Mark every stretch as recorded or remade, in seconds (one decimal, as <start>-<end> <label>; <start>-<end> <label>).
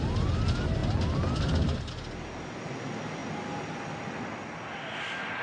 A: 0.0-5.4 recorded